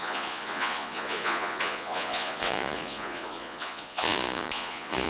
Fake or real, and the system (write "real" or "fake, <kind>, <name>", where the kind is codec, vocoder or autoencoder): fake, vocoder, Vocos